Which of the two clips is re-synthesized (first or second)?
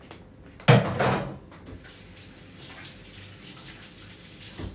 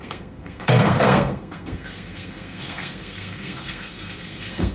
second